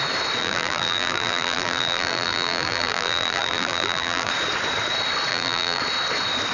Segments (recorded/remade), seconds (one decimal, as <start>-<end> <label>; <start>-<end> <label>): 0.0-0.4 recorded; 0.4-4.3 remade; 4.3-5.3 recorded; 5.3-5.8 remade; 5.8-6.5 recorded